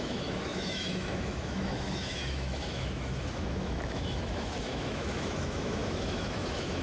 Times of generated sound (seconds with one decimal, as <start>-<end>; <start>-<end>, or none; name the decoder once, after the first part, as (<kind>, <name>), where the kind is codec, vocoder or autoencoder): 0.0-6.8 (autoencoder, DAC-VAE)